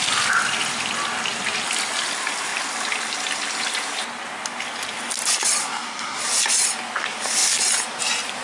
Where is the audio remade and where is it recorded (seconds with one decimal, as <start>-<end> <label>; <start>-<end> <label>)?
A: 0.0-5.6 recorded; 5.6-6.2 remade; 6.2-8.4 recorded